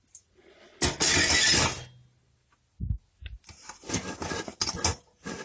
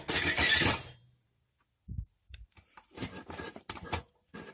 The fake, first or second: second